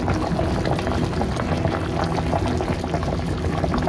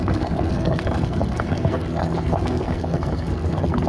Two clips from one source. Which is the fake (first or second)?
second